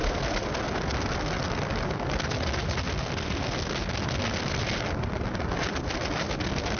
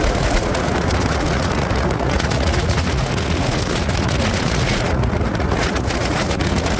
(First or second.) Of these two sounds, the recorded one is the first